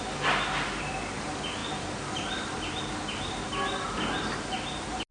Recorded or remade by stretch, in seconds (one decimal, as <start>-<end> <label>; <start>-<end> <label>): 0.0-5.1 recorded